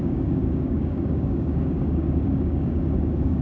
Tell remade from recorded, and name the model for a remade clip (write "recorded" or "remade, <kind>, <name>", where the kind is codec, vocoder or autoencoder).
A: remade, codec, DAC